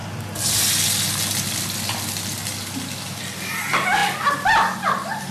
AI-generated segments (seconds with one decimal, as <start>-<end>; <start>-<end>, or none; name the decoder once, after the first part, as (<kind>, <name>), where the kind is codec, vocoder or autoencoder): none